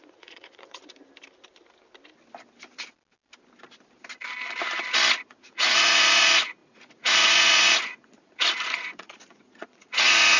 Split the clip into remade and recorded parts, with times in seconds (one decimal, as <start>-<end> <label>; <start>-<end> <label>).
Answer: 0.0-0.8 remade; 0.8-5.2 recorded; 5.2-10.4 remade